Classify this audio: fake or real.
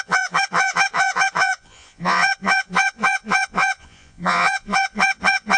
fake